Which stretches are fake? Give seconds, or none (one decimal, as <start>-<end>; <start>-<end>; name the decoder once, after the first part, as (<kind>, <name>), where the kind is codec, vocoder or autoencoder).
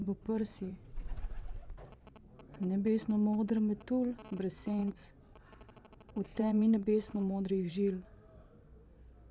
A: 0.0-1.5 (vocoder, WaveNeXt); 4.8-5.5; 6.3-7.7